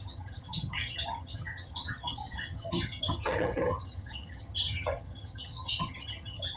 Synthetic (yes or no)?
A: yes